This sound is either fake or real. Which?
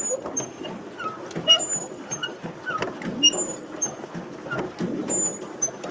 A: real